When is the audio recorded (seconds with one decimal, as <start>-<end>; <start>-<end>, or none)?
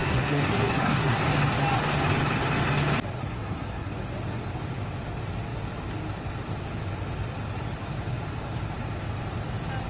1.2-3.2; 3.9-9.9